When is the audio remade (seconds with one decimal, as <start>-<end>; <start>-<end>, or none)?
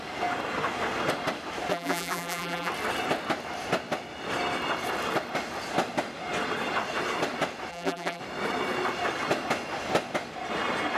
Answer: 1.7-2.7; 7.7-8.2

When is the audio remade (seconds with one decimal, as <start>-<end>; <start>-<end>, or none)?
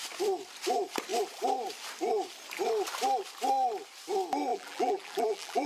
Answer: 4.5-5.7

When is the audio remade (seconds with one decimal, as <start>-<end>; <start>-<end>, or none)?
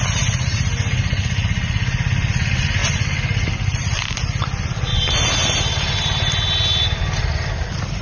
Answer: 2.8-4.9